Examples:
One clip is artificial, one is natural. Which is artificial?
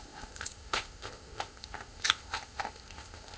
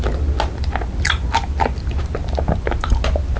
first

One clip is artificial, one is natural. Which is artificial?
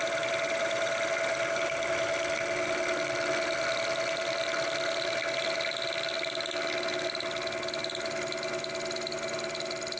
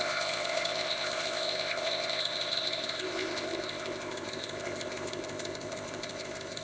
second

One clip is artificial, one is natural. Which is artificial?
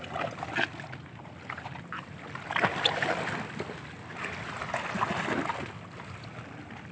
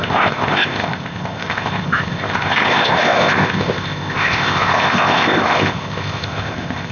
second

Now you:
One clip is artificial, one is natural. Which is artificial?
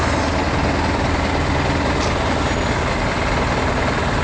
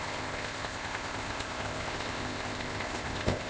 second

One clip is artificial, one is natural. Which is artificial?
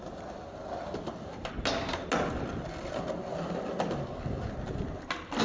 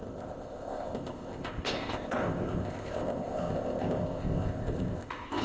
second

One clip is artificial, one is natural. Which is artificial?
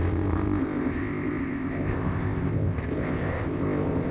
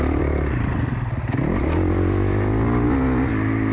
first